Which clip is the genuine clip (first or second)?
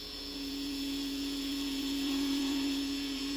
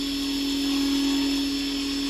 second